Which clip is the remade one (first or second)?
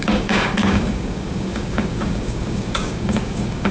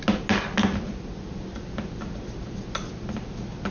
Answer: first